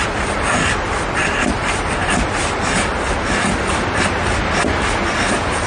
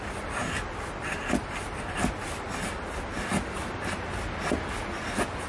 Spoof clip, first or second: first